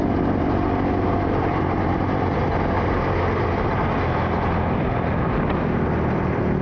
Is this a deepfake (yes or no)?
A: no